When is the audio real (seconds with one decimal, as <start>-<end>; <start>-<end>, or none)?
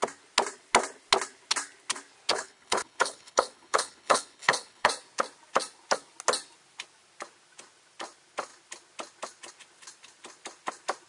0.0-2.3; 4.9-11.1